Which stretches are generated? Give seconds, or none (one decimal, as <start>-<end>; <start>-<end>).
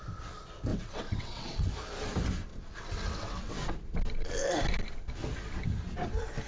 0.7-1.7; 2.5-3.7